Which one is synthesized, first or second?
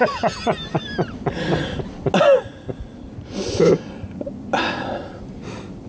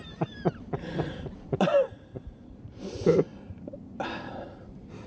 second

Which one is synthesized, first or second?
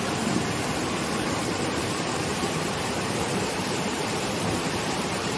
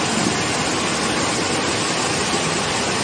first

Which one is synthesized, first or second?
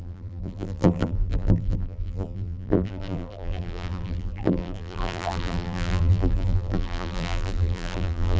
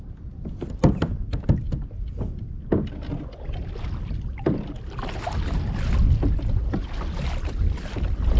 first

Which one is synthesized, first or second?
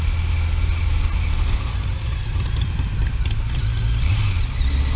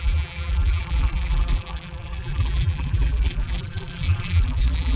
second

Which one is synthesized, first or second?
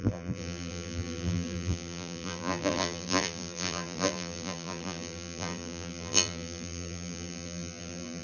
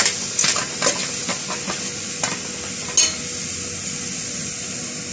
first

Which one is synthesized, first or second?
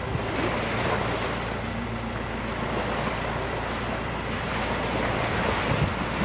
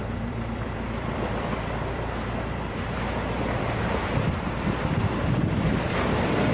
second